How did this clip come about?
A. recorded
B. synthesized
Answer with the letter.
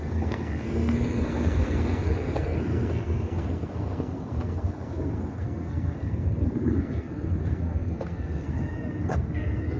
B